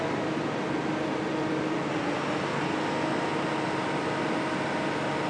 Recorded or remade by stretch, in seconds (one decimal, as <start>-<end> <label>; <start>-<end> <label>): 0.0-5.3 recorded